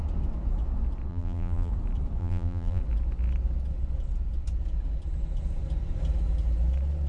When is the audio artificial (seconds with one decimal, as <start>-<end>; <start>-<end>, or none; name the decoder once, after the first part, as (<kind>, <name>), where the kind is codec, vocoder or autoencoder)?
1.1-1.7 (vocoder, BigVGAN v2); 2.2-2.8